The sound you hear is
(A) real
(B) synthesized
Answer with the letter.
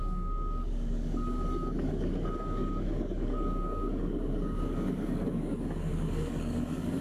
B